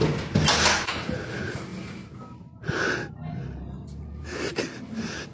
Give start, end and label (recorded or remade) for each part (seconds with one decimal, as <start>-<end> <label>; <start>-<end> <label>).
0.0-5.3 recorded